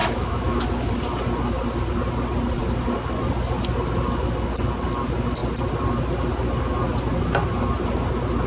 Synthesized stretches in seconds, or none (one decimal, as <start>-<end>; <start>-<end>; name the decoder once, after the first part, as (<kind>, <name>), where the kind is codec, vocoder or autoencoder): 0.0-0.9 (autoencoder, DAC-VAE)